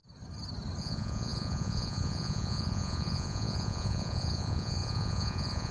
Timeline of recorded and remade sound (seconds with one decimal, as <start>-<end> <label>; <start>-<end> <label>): 0.0-0.8 recorded; 0.8-5.7 remade